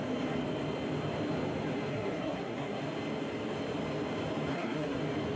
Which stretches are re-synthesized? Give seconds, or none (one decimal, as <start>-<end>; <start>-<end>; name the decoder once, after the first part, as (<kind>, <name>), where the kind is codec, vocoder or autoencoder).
1.9-2.8 (codec, SNAC); 4.5-5.0